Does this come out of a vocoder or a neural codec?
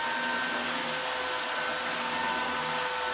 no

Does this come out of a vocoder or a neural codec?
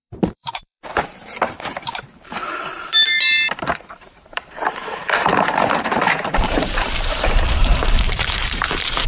yes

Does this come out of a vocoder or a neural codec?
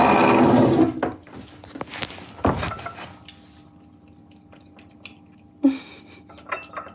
no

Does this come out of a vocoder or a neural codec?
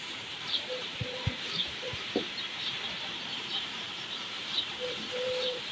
yes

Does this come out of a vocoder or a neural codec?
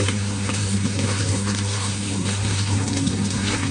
yes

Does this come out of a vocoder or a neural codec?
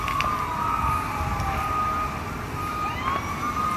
no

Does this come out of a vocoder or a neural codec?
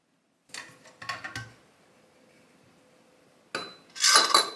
no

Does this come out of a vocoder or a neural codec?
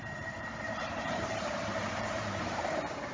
yes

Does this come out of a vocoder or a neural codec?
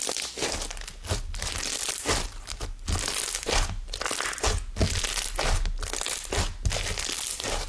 no